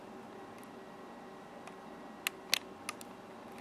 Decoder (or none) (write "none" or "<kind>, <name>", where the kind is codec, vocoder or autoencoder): none